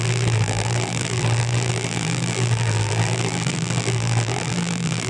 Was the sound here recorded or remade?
remade